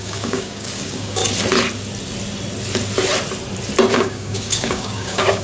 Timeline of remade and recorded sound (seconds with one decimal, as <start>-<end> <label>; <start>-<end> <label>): 0.0-1.2 remade; 1.2-3.9 recorded; 3.9-5.4 remade